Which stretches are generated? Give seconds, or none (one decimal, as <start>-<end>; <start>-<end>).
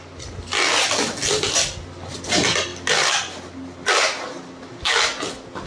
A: none